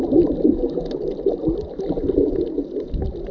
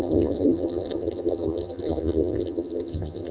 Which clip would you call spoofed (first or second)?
second